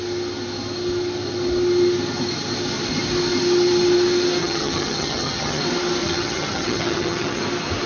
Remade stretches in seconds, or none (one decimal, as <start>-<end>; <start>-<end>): 4.4-5.6; 6.0-7.4